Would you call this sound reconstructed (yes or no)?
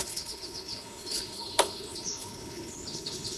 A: yes